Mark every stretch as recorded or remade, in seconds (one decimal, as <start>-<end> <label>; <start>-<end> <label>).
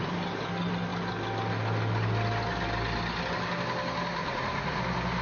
0.0-4.2 recorded; 4.2-4.8 remade; 4.8-5.2 recorded